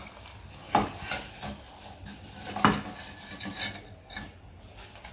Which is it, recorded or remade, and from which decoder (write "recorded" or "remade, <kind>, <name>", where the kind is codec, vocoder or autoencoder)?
recorded